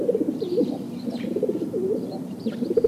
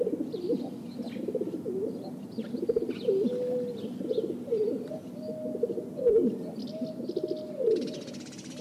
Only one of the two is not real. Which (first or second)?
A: first